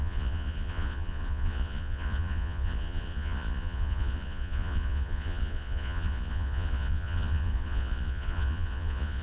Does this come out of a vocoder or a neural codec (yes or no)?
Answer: yes